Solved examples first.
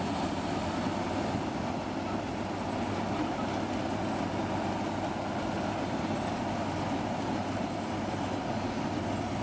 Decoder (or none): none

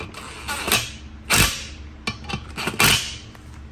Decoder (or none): none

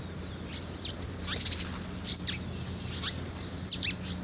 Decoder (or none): none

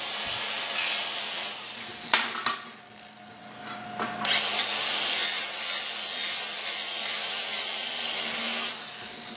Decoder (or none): none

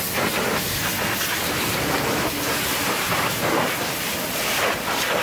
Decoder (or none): none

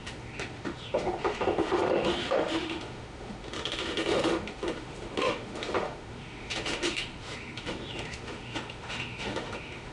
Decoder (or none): autoencoder, DAC-VAE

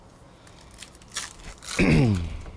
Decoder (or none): none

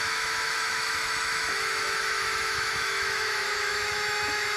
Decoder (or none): autoencoder, DAC-VAE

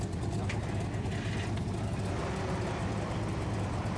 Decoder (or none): none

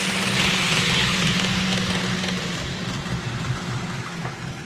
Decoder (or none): none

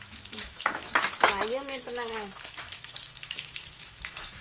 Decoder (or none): autoencoder, DAC-VAE